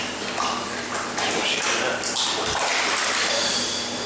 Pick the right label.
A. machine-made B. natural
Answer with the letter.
B